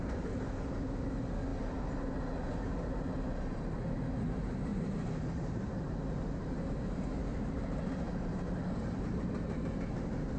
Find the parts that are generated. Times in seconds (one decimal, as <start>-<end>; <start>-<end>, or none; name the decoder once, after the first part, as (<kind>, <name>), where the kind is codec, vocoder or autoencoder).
4.7-6.6 (vocoder, BigVGAN v2); 7.3-7.9